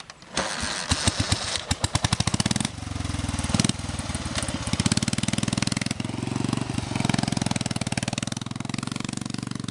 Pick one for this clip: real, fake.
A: real